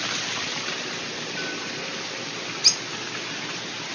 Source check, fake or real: real